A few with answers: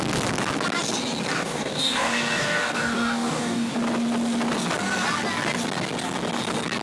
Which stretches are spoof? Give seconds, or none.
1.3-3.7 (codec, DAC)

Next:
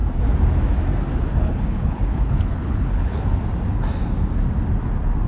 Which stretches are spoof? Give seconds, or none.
1.3-3.2 (codec, HILCodec)